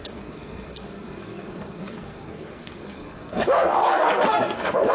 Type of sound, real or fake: fake